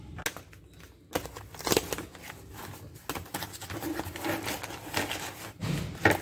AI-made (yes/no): no